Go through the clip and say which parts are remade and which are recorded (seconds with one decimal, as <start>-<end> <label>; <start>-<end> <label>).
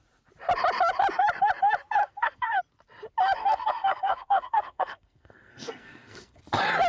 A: 0.0-2.0 recorded; 2.0-2.6 remade; 2.6-3.4 recorded; 3.4-6.4 remade; 6.4-6.9 recorded